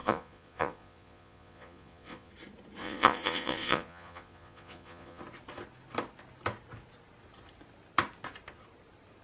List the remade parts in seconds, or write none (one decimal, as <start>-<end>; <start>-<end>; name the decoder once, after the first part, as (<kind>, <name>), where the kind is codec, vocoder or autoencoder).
0.0-2.3 (vocoder, Vocos); 2.8-5.2